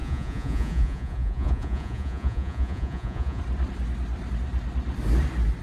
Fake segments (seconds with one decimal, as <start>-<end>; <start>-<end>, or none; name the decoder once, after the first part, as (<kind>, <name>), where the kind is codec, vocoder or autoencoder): 0.0-3.4 (vocoder, Vocos)